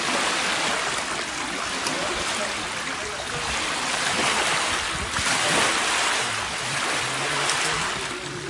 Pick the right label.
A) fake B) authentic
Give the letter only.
B